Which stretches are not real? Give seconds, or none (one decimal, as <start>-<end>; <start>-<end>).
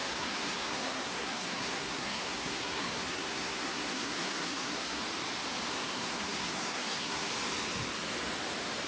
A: 0.0-5.0; 5.7-7.3